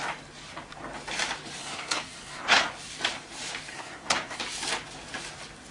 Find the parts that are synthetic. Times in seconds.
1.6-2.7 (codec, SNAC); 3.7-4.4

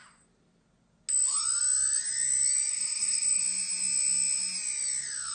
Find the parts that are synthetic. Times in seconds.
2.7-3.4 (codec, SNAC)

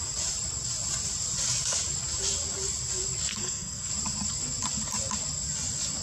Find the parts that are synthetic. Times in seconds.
3.3-3.9 (codec, SNAC)

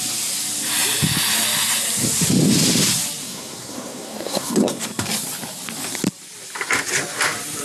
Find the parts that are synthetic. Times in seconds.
3.2-4.8 (codec, SNAC)

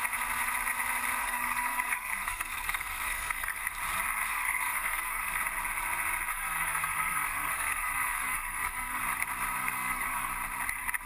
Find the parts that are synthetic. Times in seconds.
1.2-3.6 (codec, SNAC); 4.3-5.4; 6.3-9.0; 9.6-10.3

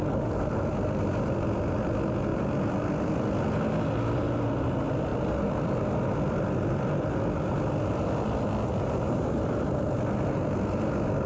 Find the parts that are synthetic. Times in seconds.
none

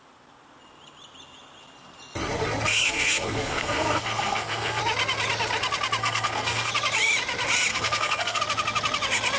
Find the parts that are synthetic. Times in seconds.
2.7-4.8 (codec, SNAC); 6.0-6.7; 7.7-8.4